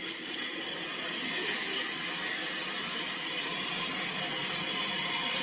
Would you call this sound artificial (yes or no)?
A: no